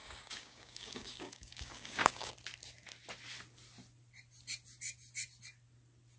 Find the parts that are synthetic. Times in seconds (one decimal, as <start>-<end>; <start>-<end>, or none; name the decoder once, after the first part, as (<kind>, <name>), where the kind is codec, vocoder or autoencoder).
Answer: 0.0-2.3 (codec, DAC)